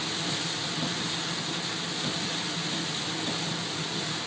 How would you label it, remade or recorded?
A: recorded